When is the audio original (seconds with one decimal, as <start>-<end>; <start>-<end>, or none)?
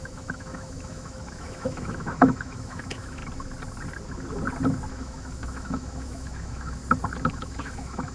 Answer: 3.2-4.9; 6.8-7.3